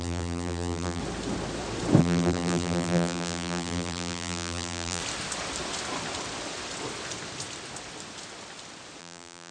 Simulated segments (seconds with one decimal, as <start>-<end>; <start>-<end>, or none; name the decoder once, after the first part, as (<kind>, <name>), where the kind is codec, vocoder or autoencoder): 0.0-1.0 (vocoder, BigVGAN v2); 2.0-5.0; 9.0-9.5

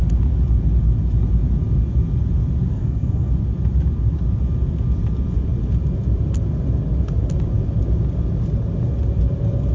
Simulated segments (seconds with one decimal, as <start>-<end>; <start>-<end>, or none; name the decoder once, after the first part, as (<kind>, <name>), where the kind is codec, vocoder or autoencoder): 2.7-3.3 (codec, SNAC)

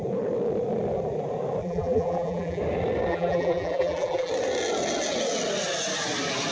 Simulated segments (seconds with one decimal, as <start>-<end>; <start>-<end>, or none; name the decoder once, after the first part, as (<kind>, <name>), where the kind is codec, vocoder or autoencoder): 1.6-2.6 (vocoder, BigVGAN v2); 3.1-4.3

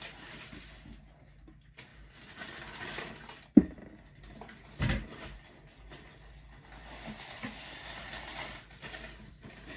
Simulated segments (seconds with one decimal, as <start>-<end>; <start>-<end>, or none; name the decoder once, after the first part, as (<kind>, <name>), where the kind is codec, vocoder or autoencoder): none

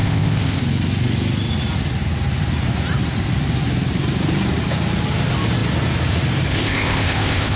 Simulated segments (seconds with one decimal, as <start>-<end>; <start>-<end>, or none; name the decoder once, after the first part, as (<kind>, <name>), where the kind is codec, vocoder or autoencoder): 0.0-0.6 (codec, ZipCodec); 6.5-7.6

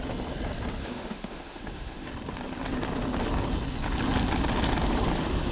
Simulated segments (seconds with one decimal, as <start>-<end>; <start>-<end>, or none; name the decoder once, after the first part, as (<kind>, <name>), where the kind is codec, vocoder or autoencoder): 0.8-2.1 (autoencoder, DAC-VAE)

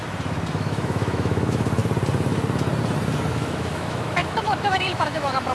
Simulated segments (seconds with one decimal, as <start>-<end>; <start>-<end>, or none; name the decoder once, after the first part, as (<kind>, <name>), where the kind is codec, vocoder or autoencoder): 0.5-1.8 (autoencoder, DAC-VAE); 3.3-5.5

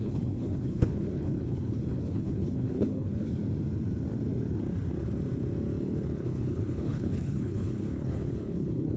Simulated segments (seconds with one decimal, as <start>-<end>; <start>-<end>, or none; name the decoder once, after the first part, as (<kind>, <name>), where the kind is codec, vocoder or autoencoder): 0.0-3.4 (codec, HILCodec); 5.8-9.0